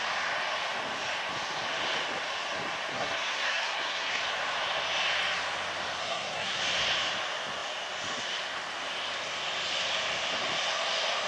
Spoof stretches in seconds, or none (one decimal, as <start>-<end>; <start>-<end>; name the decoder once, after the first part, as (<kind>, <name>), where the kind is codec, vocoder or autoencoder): 2.9-4.2 (codec, SNAC); 6.0-6.6